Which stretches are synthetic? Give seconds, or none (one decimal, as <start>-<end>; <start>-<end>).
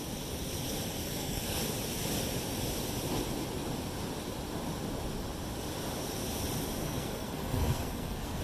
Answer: 1.0-1.6; 6.8-8.4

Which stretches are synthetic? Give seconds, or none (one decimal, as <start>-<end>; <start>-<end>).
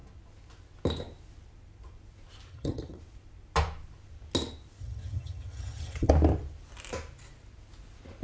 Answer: 2.5-3.0; 4.8-6.1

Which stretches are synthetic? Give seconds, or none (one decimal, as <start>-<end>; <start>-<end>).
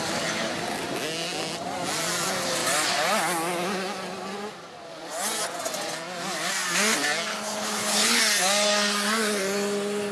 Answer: 7.3-8.2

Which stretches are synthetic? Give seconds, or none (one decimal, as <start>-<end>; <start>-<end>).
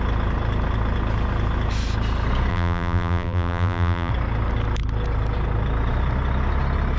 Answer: 2.5-4.1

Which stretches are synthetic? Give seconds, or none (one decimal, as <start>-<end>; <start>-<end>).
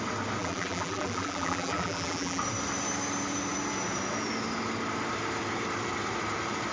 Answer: 0.4-2.4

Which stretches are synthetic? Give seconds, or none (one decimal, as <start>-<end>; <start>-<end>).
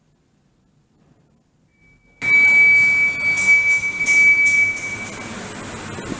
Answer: 3.4-4.0